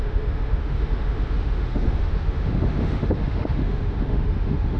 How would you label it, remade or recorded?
remade